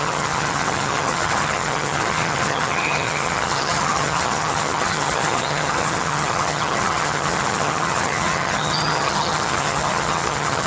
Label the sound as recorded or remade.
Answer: remade